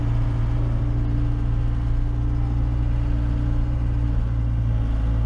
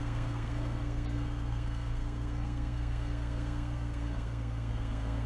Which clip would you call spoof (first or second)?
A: second